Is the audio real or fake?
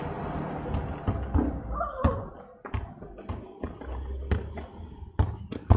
real